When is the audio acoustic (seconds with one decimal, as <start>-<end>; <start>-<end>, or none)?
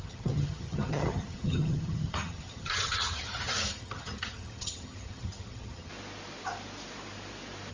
5.9-7.7